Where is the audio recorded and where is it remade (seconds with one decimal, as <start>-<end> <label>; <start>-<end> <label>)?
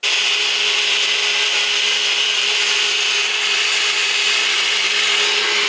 0.0-4.0 recorded; 4.0-5.7 remade